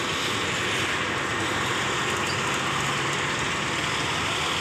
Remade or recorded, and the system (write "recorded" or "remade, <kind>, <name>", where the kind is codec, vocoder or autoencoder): recorded